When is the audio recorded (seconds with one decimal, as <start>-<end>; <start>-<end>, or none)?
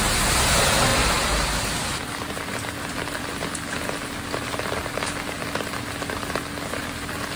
0.0-7.4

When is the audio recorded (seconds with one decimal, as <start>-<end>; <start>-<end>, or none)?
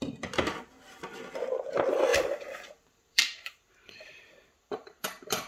0.0-2.1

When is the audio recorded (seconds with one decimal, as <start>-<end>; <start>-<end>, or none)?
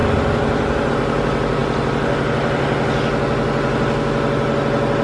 0.0-5.0